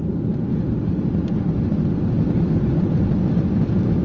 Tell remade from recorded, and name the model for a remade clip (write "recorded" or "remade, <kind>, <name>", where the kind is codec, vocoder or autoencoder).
recorded